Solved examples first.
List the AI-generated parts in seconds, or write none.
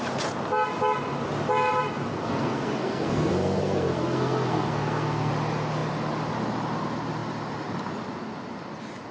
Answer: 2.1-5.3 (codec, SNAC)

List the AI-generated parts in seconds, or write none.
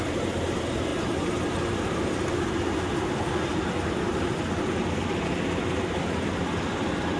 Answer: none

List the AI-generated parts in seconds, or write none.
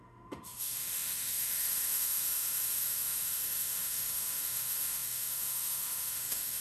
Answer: 0.0-6.6 (autoencoder, DAC-VAE)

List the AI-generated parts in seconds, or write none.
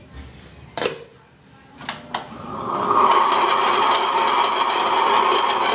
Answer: none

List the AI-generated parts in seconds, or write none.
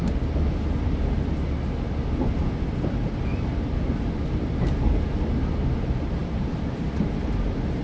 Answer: 6.2-7.1 (vocoder, BigVGAN v2)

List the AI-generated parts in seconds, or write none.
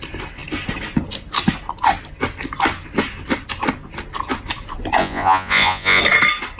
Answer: 5.0-6.0 (vocoder, Vocos)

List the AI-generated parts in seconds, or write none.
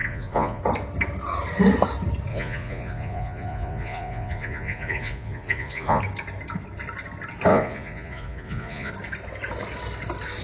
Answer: 0.0-0.6 (vocoder, Vocos); 2.3-6.0; 7.5-8.9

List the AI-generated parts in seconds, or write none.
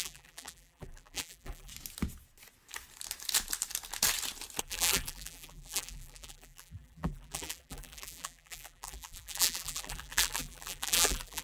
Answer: 0.0-1.7 (vocoder, BigVGAN v2); 4.6-11.4